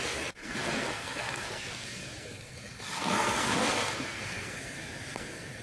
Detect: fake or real fake